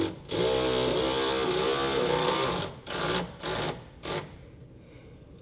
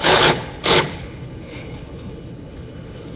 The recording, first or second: first